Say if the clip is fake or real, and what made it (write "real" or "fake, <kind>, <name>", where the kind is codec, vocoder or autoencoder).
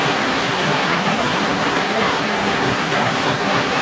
fake, codec, SNAC